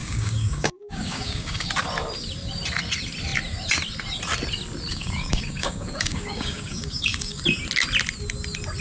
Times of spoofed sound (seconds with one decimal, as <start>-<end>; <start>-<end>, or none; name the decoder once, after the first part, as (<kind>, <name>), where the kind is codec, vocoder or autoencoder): 0.0-1.7 (codec, DAC); 4.9-7.4